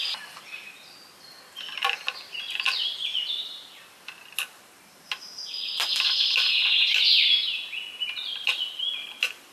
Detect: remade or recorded recorded